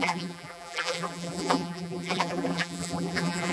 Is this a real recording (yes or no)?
no